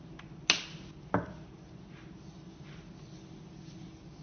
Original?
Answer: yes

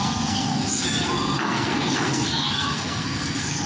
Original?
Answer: no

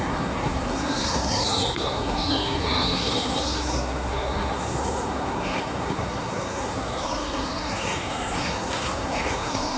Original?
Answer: no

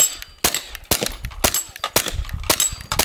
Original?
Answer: yes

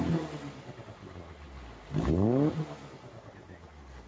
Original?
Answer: yes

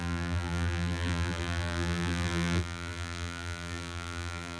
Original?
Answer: no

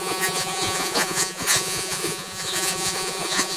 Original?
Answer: no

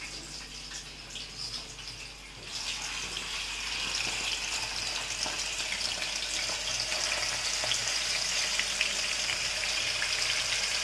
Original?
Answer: yes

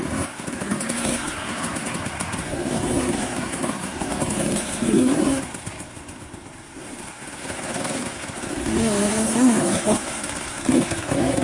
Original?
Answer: no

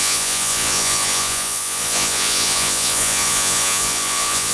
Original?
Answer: no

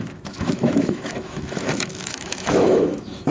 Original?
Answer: no